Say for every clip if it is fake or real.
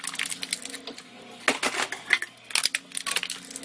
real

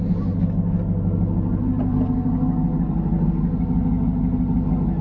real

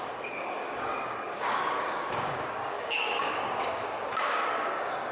fake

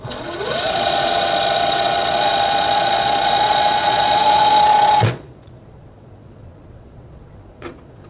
fake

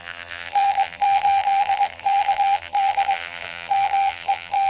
fake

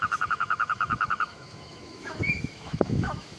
fake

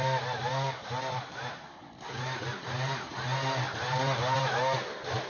real